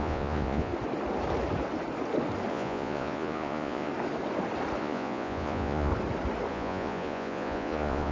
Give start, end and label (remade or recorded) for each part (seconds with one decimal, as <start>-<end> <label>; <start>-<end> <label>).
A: 0.0-0.7 remade; 0.7-2.5 recorded; 2.5-3.9 remade; 3.9-4.8 recorded; 4.8-5.9 remade; 5.9-6.5 recorded; 6.5-8.1 remade